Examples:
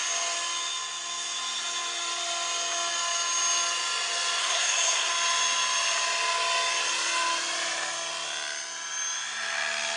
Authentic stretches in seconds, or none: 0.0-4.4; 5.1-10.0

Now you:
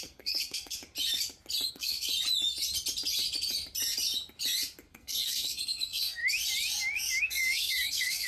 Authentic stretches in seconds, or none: 0.8-1.7; 2.1-4.9; 6.2-7.2

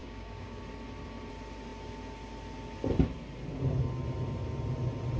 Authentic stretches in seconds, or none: 0.6-5.2

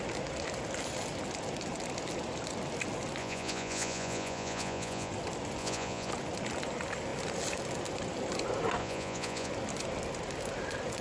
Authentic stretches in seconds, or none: 0.0-3.2; 5.1-5.6; 6.1-8.8; 9.5-11.0

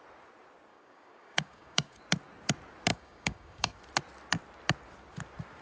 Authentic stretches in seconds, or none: 0.0-0.7; 2.0-2.9; 3.8-5.6

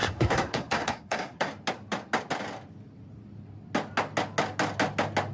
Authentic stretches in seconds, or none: 1.5-5.3